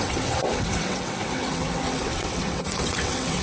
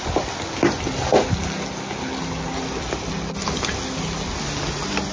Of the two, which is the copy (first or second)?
first